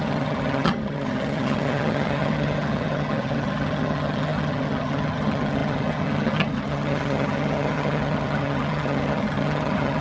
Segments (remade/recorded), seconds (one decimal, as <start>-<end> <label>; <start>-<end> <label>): 0.0-10.0 remade